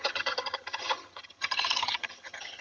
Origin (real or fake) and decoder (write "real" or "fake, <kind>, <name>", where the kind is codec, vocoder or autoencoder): fake, vocoder, HiFi-GAN